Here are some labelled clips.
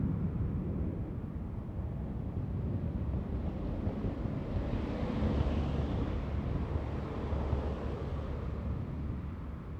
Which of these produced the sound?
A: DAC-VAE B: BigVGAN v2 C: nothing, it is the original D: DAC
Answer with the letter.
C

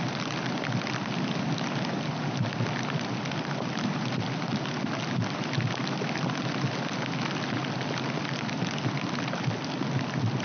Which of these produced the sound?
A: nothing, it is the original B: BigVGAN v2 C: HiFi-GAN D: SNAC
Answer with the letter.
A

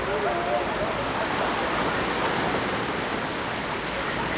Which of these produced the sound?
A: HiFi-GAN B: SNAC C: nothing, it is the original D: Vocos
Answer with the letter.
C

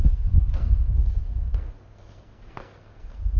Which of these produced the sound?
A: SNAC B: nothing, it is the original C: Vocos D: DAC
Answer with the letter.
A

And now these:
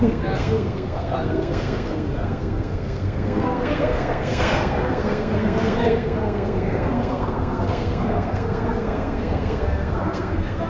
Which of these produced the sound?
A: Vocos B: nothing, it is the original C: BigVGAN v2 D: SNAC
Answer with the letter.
D